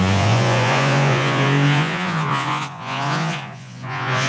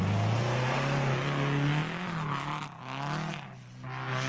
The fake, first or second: first